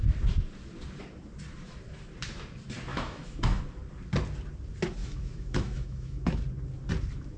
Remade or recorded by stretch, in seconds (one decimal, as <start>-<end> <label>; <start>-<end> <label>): 0.0-2.9 recorded; 2.9-3.6 remade; 3.6-5.0 recorded; 5.0-6.4 remade; 6.4-7.4 recorded

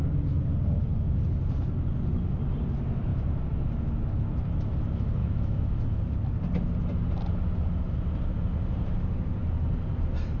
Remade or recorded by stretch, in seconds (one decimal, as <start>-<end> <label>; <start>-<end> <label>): 0.0-5.2 recorded; 5.2-5.8 remade; 5.8-10.4 recorded

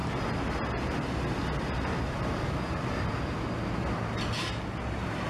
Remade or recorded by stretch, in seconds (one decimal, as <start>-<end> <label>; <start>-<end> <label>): 0.0-5.3 recorded